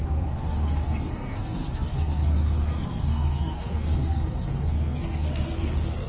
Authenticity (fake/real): fake